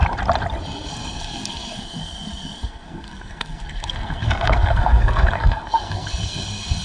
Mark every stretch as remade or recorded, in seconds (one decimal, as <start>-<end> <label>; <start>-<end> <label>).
0.0-0.9 recorded; 0.9-6.8 remade